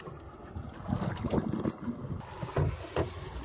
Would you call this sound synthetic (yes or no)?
no